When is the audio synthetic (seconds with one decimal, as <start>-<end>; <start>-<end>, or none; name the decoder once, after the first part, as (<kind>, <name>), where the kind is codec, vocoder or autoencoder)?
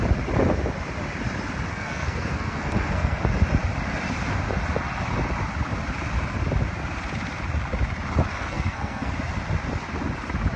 1.7-3.2 (codec, SNAC); 8.3-9.1